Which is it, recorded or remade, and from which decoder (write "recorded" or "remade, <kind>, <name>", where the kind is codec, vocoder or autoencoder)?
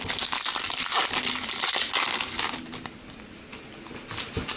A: recorded